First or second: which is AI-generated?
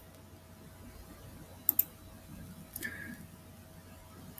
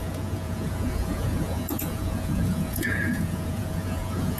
second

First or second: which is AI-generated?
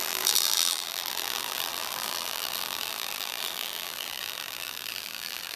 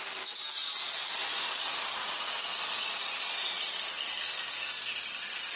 first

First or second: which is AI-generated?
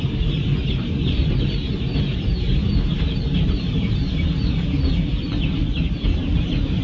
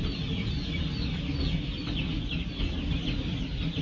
first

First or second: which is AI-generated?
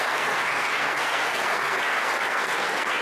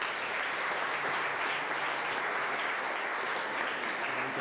first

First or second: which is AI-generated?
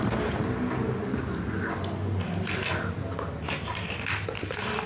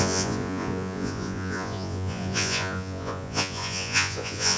second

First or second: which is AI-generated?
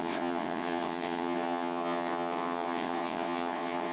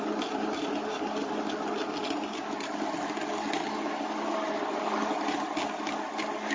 first